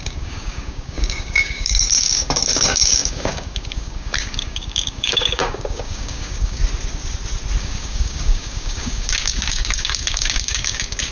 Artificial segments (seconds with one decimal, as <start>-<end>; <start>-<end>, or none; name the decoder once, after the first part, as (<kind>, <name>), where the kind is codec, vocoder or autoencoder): 0.0-6.6 (codec, DAC); 7.6-11.1